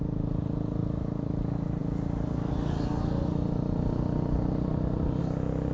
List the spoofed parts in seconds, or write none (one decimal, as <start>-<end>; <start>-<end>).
none